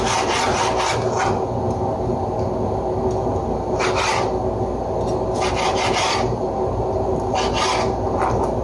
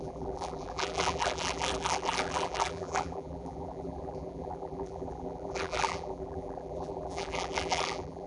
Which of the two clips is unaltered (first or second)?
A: first